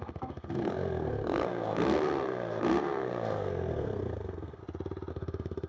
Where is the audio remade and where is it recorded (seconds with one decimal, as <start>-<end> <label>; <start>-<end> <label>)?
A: 0.0-4.6 remade; 4.6-5.1 recorded; 5.1-5.7 remade